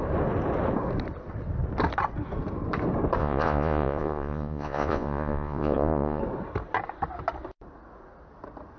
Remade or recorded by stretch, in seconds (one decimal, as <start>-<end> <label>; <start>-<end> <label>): 0.0-3.2 recorded; 3.2-6.2 remade; 6.2-8.8 recorded